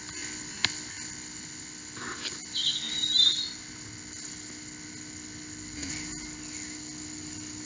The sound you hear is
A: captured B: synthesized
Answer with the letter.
A